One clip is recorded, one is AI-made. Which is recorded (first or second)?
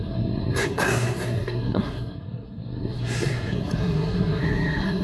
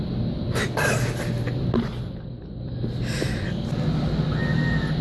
second